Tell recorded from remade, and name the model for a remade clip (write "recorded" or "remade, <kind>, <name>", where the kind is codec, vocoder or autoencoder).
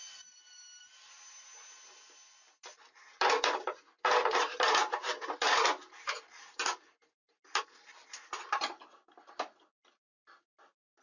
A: recorded